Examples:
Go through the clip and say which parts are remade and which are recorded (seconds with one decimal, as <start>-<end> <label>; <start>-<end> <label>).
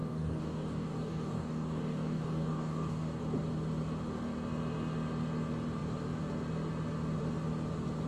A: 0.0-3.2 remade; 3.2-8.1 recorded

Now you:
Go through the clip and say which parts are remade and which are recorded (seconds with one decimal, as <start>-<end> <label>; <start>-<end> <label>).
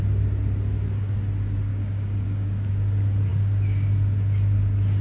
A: 0.0-1.7 recorded; 1.7-2.7 remade; 2.7-5.0 recorded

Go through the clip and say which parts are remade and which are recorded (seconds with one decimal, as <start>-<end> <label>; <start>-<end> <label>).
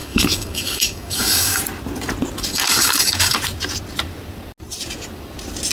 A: 0.0-1.6 remade; 1.6-2.5 recorded; 2.5-3.4 remade; 3.4-5.7 recorded